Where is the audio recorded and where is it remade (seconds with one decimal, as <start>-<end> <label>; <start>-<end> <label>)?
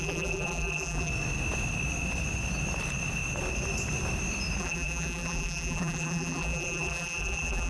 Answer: 0.0-1.1 remade; 1.1-4.6 recorded; 4.6-7.7 remade